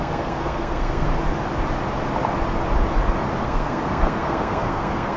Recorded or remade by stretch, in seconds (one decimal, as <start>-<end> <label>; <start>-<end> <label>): 0.0-1.1 remade; 1.1-3.4 recorded; 3.4-5.2 remade